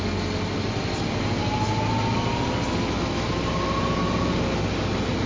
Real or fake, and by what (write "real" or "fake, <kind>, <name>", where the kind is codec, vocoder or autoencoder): real